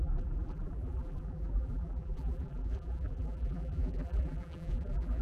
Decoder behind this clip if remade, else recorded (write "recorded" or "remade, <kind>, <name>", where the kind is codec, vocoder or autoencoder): remade, vocoder, BigVGAN v2